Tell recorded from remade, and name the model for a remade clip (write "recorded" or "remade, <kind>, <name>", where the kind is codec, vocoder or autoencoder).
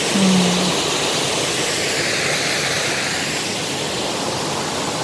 recorded